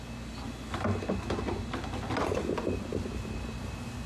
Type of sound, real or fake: real